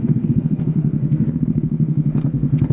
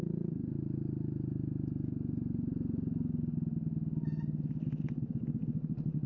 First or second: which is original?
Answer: second